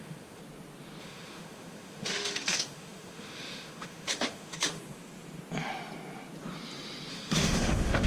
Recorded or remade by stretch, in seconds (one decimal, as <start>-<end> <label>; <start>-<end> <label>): 0.0-0.4 remade; 0.4-1.0 recorded; 1.0-4.8 remade; 4.8-7.1 recorded; 7.1-8.1 remade